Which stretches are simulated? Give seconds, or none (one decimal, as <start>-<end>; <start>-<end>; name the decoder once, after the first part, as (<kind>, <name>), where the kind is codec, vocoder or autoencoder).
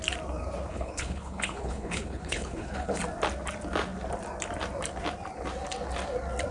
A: 0.7-3.0 (codec, HILCodec)